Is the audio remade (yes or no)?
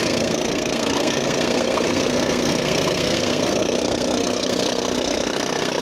yes